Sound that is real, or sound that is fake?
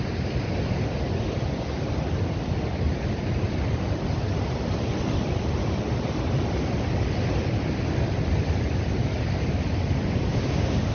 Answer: real